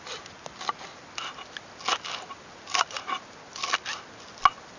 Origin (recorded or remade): recorded